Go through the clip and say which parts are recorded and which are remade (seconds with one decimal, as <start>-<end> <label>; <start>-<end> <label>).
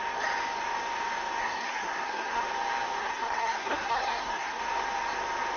0.0-1.4 recorded; 1.4-2.4 remade; 2.4-3.0 recorded; 3.0-4.6 remade; 4.6-5.6 recorded